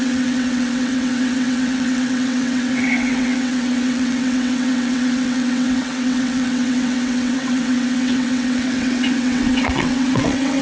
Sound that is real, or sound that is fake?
fake